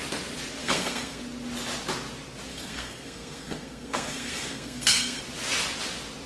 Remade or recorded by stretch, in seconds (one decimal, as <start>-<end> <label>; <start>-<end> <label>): 0.0-0.6 recorded; 0.6-1.2 remade; 1.2-2.5 recorded; 2.5-5.2 remade; 5.2-6.3 recorded